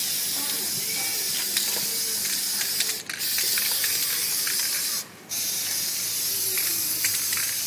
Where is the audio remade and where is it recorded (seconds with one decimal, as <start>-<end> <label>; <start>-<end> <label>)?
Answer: 0.0-7.7 recorded